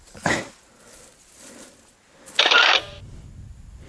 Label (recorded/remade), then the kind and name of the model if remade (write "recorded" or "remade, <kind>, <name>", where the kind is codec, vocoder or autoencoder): recorded